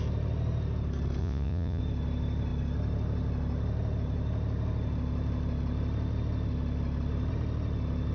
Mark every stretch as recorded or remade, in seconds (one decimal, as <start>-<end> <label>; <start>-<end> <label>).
0.0-1.2 recorded; 1.2-1.8 remade; 1.8-8.1 recorded